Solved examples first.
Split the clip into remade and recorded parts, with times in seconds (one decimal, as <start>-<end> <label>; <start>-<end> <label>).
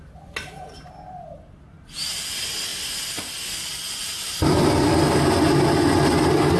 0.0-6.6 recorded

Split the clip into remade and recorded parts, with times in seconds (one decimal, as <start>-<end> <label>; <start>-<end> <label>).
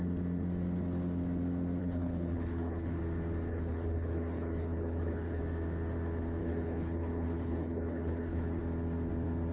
0.0-1.8 recorded; 1.8-3.0 remade; 3.0-3.5 recorded; 3.5-5.4 remade; 5.4-6.4 recorded; 6.4-8.6 remade; 8.6-9.5 recorded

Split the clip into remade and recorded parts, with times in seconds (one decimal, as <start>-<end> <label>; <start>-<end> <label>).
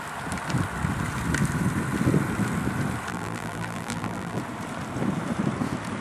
0.0-3.1 recorded; 3.1-4.4 remade; 4.4-6.0 recorded